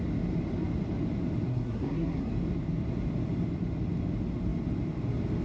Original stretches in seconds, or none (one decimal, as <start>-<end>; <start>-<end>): 0.0-1.5; 2.3-5.4